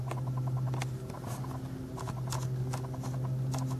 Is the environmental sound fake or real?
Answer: real